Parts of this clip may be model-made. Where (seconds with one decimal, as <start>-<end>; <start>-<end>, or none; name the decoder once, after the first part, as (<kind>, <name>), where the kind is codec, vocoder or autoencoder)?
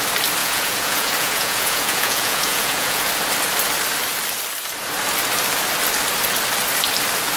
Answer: 0.4-3.1 (vocoder, Vocos)